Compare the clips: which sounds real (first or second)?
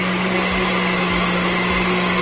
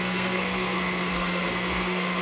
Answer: first